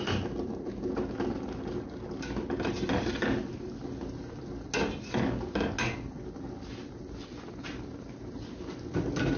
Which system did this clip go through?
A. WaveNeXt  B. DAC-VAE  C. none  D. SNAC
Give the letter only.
C